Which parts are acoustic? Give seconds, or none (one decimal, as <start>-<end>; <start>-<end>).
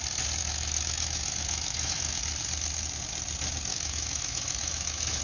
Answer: 0.0-0.4; 2.2-3.7